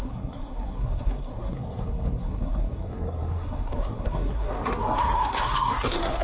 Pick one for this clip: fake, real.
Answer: fake